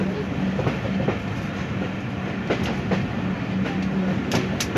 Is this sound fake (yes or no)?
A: yes